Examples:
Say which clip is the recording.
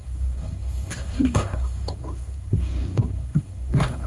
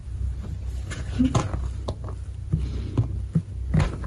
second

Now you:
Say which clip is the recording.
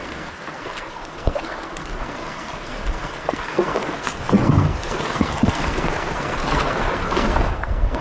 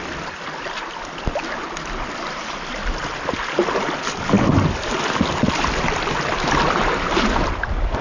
second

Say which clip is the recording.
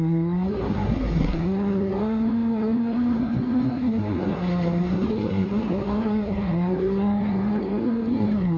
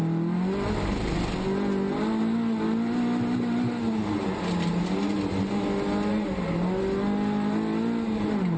second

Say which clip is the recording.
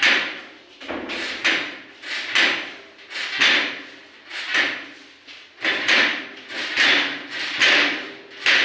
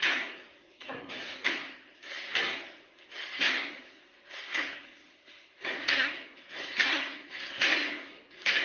first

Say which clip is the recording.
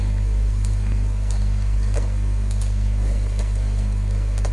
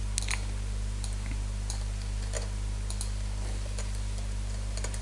second